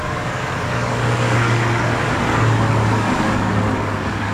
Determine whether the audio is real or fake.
fake